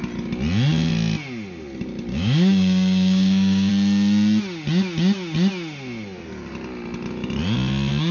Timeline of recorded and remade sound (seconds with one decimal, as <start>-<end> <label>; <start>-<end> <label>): 0.0-2.1 recorded; 2.1-3.7 remade; 3.7-8.1 recorded